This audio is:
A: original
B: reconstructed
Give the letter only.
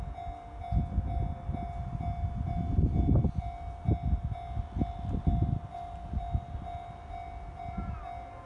A